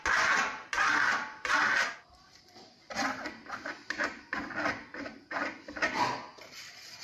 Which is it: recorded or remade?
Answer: recorded